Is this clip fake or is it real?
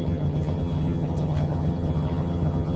fake